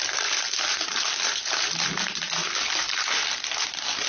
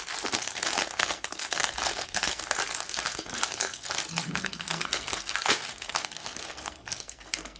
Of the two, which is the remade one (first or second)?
second